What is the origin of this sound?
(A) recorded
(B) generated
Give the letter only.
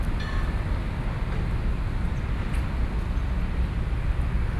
A